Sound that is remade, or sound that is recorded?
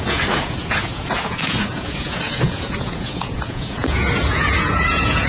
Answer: remade